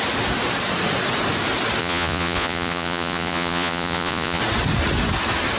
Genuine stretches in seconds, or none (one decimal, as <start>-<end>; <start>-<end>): 0.0-1.8; 4.4-5.6